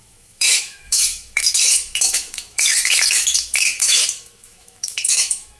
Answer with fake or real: fake